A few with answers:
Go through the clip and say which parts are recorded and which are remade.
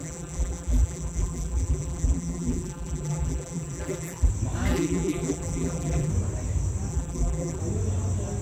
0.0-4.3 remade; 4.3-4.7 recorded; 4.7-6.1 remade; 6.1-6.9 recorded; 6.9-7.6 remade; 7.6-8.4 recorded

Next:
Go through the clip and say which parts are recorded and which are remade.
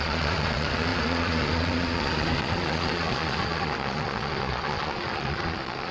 0.0-5.9 remade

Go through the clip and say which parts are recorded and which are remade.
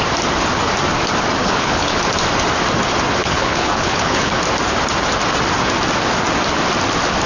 0.0-1.4 recorded; 1.4-2.0 remade; 2.0-3.2 recorded; 3.2-4.4 remade; 4.4-7.3 recorded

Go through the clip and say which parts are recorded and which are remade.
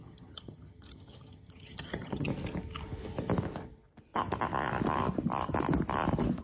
0.0-2.3 remade; 2.3-6.4 recorded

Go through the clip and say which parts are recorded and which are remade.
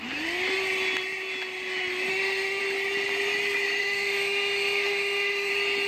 0.0-2.1 recorded; 2.1-2.6 remade; 2.6-3.8 recorded; 3.8-5.5 remade; 5.5-5.9 recorded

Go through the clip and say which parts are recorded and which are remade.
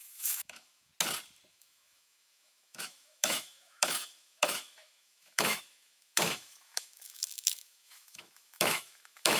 0.0-0.9 remade; 0.9-1.5 recorded; 1.5-9.4 remade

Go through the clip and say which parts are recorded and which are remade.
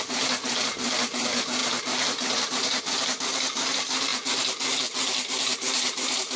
0.0-6.4 recorded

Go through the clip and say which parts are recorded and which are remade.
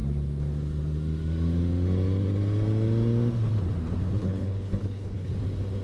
0.0-4.2 recorded; 4.2-5.3 remade; 5.3-5.8 recorded